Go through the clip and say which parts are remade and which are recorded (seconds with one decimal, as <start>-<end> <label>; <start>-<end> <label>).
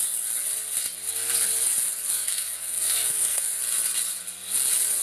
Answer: 0.0-2.1 recorded; 2.1-3.5 remade; 3.5-5.0 recorded